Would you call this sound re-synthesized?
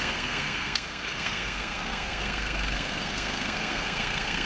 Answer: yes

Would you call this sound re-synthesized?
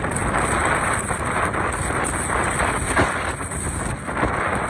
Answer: no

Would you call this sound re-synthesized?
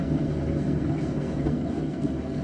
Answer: yes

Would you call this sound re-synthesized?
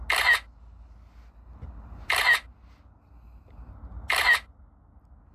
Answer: no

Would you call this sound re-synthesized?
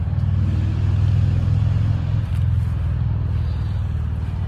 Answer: no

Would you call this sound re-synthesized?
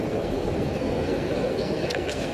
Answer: yes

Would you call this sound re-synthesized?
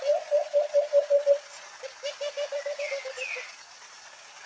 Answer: no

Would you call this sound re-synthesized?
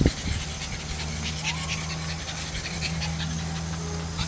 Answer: no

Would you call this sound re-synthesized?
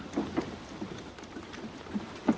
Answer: no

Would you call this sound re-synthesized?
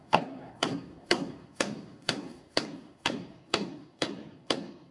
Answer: yes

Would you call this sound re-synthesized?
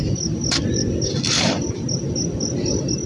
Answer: no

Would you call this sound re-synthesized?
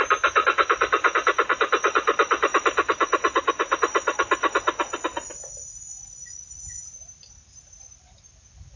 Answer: no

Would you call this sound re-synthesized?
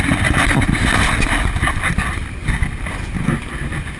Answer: no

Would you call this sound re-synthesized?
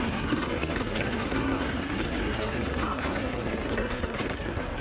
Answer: yes